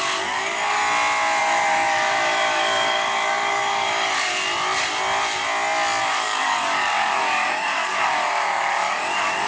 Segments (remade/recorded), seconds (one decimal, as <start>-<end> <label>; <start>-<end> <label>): 0.0-0.8 remade; 0.8-1.4 recorded; 1.4-4.3 remade; 4.3-6.0 recorded; 6.0-9.5 remade